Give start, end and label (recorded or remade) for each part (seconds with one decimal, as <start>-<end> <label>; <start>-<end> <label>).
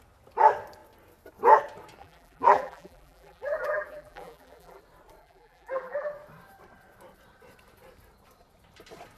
0.0-2.0 recorded; 2.0-4.8 remade; 4.8-5.2 recorded; 5.2-6.1 remade; 6.1-9.2 recorded